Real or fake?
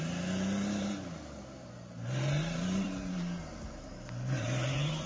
fake